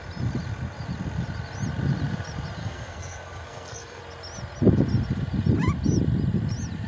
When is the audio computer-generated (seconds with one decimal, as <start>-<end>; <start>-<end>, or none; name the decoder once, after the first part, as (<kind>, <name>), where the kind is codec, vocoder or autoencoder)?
2.6-4.0 (codec, SNAC)

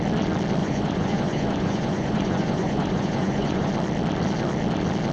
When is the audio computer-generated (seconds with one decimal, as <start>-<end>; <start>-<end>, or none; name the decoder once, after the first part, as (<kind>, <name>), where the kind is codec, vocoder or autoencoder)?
0.6-3.7 (vocoder, Vocos)

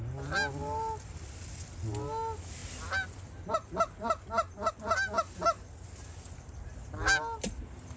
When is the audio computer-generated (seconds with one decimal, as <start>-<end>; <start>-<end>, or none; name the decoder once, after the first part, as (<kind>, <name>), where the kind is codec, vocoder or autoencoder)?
none

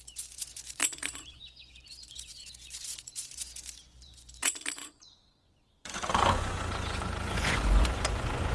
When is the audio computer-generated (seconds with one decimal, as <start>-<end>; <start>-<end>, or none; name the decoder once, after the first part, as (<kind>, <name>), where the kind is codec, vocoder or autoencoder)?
0.0-8.5 (vocoder, Vocos)

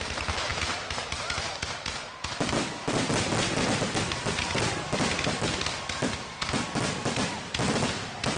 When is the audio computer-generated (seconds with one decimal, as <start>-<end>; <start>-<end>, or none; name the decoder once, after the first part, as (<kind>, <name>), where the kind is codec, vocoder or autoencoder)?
none